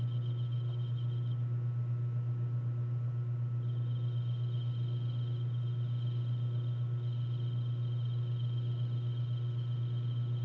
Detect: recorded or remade recorded